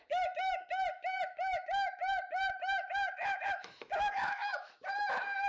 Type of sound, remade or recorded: remade